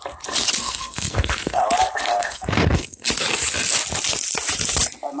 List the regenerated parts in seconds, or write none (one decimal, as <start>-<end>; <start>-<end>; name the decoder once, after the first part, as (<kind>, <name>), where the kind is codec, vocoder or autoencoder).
0.6-1.6 (codec, SNAC); 2.1-3.1